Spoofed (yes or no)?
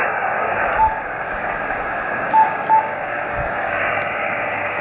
yes